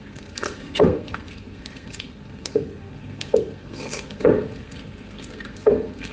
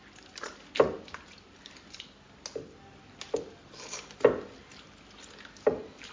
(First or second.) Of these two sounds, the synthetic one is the first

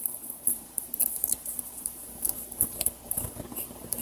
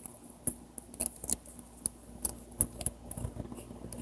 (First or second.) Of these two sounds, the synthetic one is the first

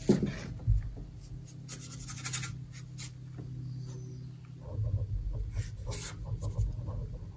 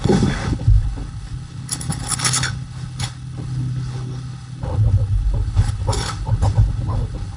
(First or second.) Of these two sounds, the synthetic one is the second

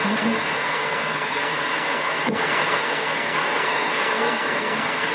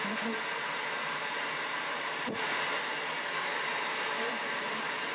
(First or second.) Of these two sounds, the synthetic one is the first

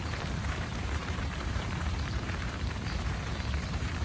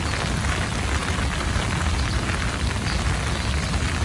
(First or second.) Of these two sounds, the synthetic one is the first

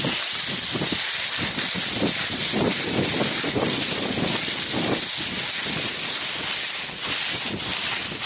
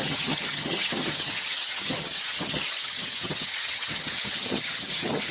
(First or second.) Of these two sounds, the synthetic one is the second